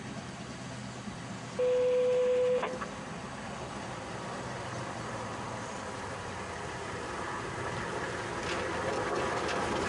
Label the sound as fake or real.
real